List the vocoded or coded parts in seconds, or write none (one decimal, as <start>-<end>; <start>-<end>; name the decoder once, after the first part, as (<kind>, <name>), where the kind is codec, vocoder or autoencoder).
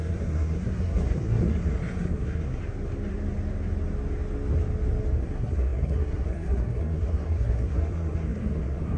0.0-2.6 (codec, SNAC); 5.2-9.0